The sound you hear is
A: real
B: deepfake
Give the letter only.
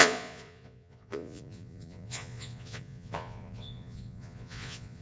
B